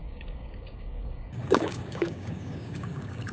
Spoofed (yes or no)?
yes